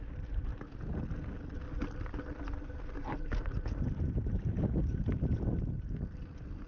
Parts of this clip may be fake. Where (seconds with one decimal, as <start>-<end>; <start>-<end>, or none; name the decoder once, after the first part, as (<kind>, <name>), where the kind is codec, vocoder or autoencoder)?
0.0-0.5 (vocoder, BigVGAN v2); 3.4-6.7